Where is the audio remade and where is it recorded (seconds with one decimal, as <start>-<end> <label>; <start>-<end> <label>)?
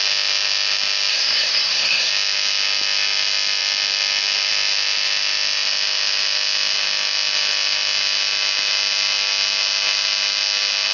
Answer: 0.0-1.1 recorded; 1.1-2.1 remade; 2.1-10.9 recorded